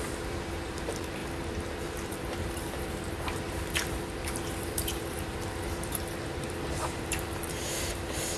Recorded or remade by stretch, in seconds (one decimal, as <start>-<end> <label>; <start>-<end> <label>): 0.0-8.4 remade